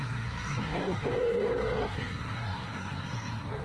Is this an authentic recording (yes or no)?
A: no